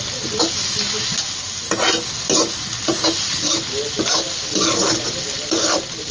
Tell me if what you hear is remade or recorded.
recorded